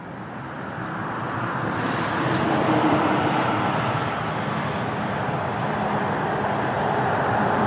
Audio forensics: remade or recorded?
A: remade